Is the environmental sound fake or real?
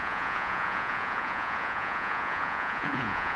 fake